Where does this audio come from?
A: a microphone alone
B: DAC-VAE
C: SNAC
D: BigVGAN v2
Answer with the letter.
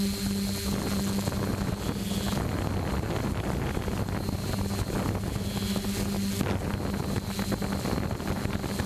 A